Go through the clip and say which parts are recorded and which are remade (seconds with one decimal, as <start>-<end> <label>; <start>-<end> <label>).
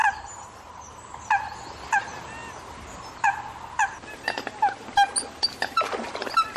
0.0-6.6 recorded